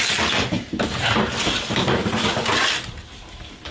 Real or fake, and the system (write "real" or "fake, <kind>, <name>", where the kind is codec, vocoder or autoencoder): real